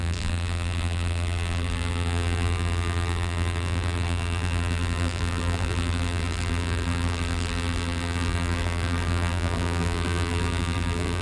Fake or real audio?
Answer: fake